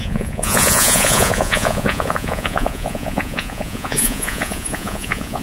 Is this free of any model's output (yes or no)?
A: no